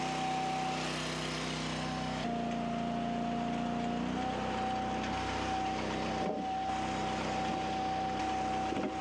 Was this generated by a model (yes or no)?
no